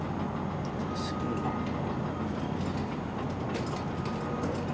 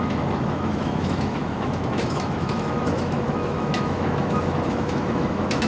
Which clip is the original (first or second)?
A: first